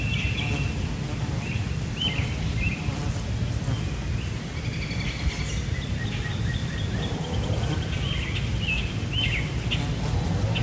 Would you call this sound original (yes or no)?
yes